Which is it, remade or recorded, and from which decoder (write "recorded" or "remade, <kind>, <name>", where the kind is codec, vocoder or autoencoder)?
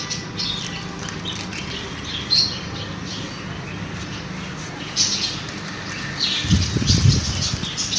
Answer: recorded